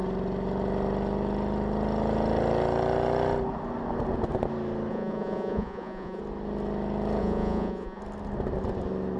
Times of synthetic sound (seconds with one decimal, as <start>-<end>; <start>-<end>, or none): 4.9-6.2; 7.2-8.0